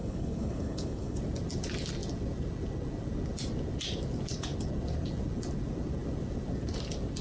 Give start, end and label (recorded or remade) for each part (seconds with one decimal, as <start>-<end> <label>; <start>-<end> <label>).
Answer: 0.0-1.2 remade; 1.2-7.2 recorded